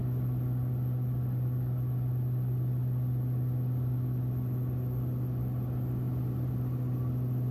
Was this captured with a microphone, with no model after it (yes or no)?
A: yes